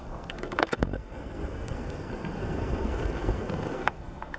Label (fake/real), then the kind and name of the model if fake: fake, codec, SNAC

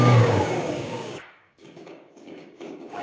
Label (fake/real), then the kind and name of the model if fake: fake, codec, DAC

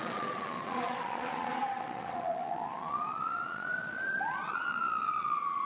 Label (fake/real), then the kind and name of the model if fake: fake, vocoder, Vocos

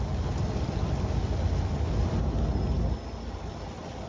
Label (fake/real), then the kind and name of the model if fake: real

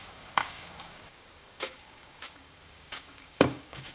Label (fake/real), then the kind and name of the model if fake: fake, codec, DAC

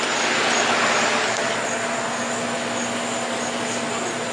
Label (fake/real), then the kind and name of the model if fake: real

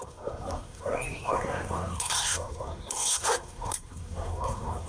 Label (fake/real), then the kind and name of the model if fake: fake, codec, SNAC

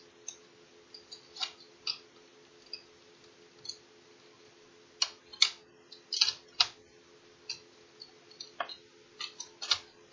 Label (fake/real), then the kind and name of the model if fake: real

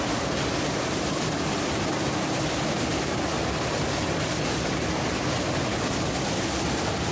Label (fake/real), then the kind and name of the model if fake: real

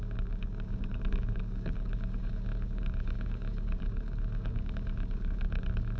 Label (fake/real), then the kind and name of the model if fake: fake, codec, DAC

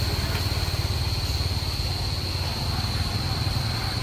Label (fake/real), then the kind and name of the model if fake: real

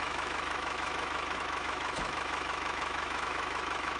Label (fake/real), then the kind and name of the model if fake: fake, autoencoder, DAC-VAE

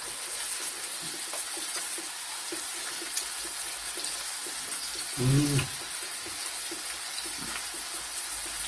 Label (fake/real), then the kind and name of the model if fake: real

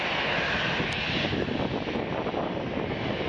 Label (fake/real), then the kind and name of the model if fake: real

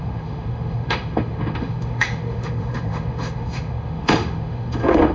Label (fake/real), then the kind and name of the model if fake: fake, autoencoder, DAC-VAE